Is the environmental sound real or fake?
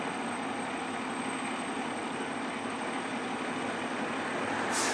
real